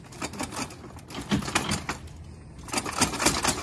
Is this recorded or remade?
recorded